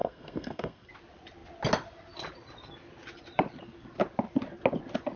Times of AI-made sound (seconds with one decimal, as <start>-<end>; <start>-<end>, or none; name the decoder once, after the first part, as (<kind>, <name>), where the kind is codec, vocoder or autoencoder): 0.0-0.9 (codec, SNAC)